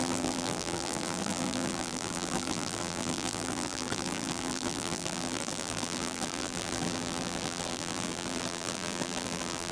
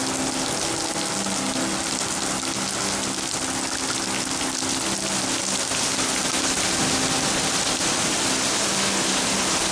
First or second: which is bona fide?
second